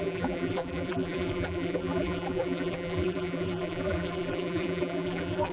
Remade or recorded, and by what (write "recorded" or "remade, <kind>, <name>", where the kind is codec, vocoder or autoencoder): remade, vocoder, BigVGAN v2